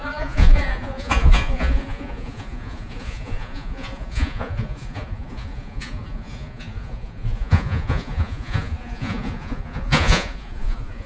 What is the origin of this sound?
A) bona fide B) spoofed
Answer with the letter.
B